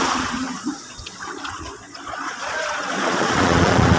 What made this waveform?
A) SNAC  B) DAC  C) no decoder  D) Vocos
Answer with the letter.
D